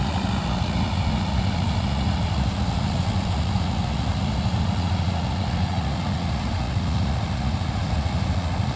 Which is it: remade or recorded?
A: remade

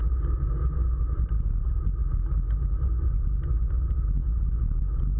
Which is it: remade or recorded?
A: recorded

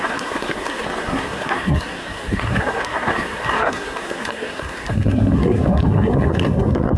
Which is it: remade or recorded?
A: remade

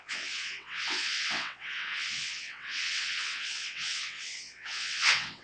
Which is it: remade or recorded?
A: remade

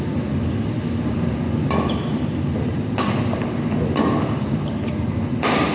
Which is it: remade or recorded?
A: recorded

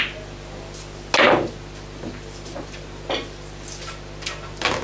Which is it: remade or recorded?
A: recorded